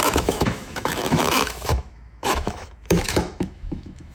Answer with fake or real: fake